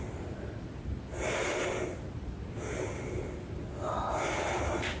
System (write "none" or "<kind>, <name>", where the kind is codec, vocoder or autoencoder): none